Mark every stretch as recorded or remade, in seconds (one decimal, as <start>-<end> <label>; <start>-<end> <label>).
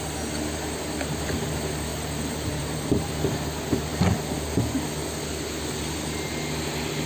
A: 0.0-1.9 recorded; 1.9-3.1 remade; 3.1-7.1 recorded